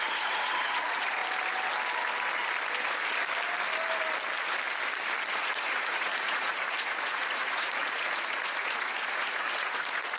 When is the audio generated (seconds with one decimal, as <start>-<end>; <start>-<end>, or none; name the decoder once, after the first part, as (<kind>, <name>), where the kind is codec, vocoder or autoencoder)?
0.0-1.2 (vocoder, Vocos); 5.3-10.2